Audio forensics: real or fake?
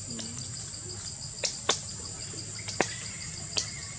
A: real